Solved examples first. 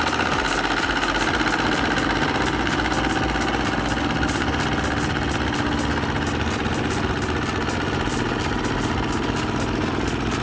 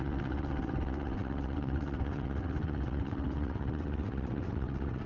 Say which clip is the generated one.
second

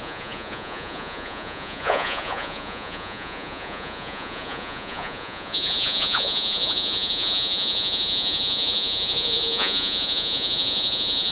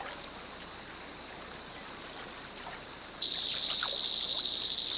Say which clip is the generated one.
first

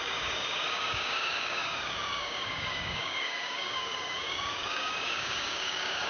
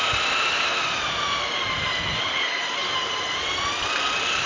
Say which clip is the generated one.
first